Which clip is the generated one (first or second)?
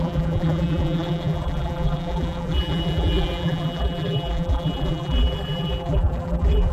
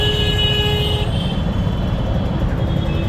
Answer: first